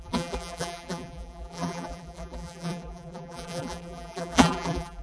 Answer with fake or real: fake